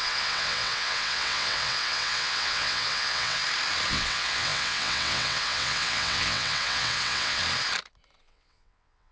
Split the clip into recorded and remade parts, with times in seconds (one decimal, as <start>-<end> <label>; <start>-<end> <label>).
0.0-3.4 remade; 3.4-3.9 recorded; 3.9-7.4 remade; 7.4-8.2 recorded; 8.2-9.1 remade